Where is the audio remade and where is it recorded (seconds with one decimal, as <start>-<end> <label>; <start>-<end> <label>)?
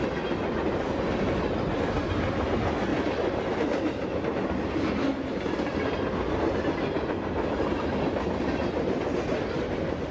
0.0-10.1 recorded